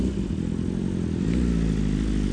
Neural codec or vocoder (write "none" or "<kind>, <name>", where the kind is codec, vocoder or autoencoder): none